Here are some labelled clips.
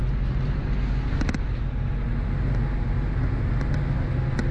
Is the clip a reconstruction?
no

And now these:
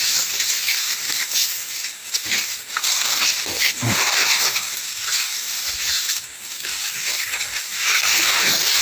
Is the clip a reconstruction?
yes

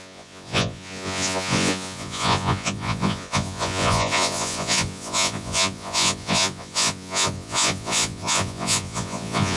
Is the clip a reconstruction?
yes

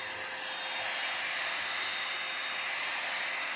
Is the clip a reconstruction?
no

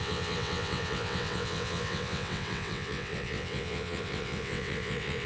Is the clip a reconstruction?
yes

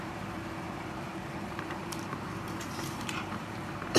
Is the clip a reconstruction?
yes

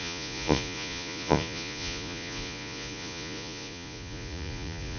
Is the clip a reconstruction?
yes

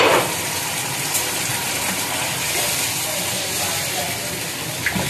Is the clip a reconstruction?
yes